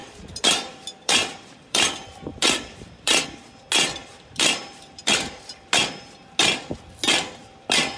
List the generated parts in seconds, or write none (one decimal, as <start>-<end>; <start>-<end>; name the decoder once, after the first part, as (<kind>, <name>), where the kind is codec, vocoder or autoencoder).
0.0-1.9 (vocoder, BigVGAN v2); 2.3-3.2; 4.0-5.6